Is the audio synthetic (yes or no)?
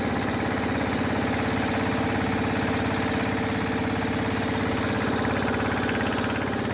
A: no